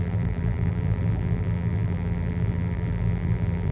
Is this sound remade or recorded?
remade